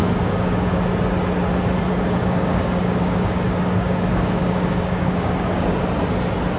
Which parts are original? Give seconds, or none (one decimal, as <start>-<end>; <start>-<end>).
0.8-1.9; 5.7-6.6